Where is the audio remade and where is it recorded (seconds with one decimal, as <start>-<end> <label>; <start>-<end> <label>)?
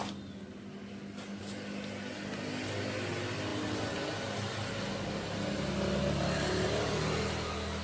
0.0-7.8 recorded